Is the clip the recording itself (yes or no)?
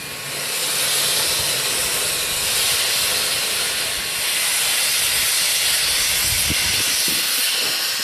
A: yes